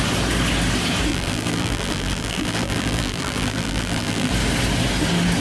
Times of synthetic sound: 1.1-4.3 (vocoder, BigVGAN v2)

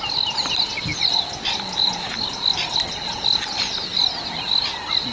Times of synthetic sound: none